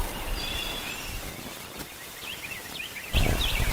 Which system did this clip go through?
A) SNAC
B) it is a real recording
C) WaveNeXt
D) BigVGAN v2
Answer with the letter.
D